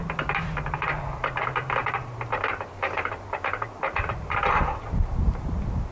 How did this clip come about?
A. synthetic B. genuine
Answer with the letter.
B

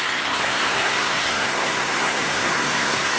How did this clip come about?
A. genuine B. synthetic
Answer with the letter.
B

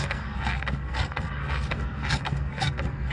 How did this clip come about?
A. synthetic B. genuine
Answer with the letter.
A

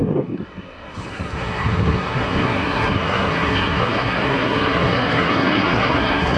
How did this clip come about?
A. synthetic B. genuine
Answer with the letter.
A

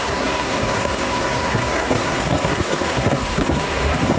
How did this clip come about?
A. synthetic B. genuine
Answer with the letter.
A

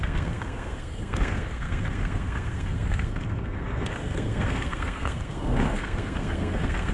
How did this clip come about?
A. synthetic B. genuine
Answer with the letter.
A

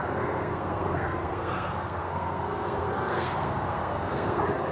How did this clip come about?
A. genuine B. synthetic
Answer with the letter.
B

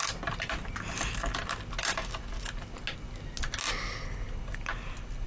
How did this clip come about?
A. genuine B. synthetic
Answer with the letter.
A